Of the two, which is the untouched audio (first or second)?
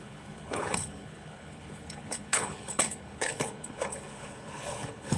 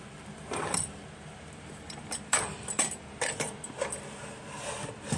second